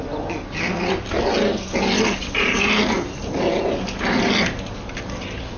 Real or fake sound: real